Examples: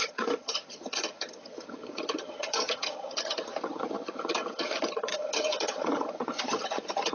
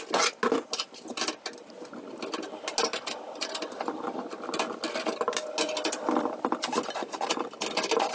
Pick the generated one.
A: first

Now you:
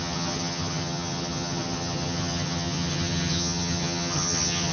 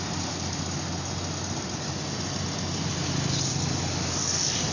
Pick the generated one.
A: first